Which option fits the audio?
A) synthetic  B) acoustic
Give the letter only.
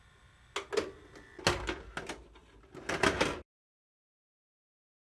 B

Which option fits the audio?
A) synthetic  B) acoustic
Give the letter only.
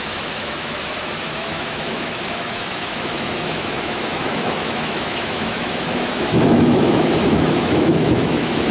A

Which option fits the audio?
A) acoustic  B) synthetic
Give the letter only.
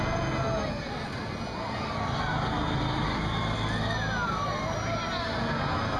A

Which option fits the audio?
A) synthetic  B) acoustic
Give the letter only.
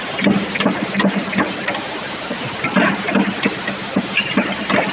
B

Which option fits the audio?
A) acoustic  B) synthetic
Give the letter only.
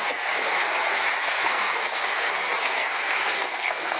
B